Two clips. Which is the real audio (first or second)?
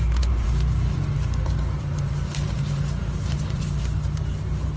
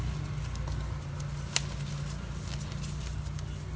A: second